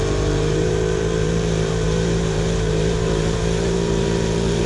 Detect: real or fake fake